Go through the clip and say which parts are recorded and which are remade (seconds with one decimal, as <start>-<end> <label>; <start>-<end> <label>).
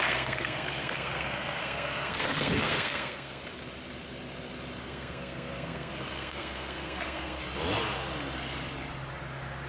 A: 0.0-3.4 remade; 3.4-4.8 recorded; 4.8-7.4 remade; 7.4-9.7 recorded